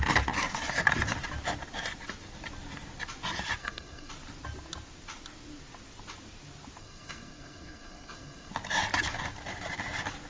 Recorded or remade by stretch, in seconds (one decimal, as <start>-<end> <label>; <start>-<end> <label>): 0.0-3.6 recorded; 3.6-4.1 remade; 4.1-6.8 recorded; 6.8-8.5 remade; 8.5-10.3 recorded